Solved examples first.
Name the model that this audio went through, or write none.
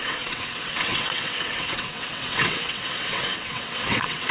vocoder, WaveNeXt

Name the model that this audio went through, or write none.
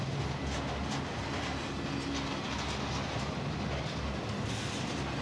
none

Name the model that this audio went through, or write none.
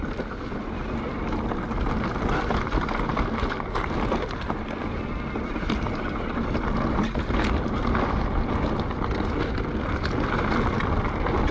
none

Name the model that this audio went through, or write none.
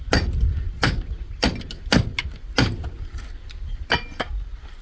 none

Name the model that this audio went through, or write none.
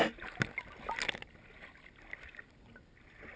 none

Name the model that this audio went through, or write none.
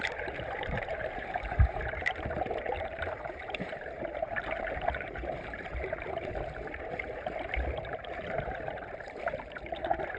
vocoder, BigVGAN v2